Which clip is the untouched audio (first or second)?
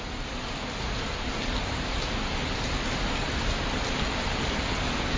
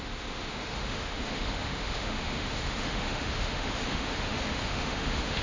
first